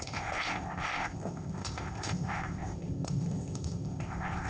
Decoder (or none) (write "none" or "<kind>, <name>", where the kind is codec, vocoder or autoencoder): codec, ZipCodec